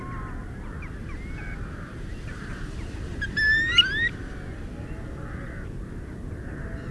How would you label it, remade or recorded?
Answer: recorded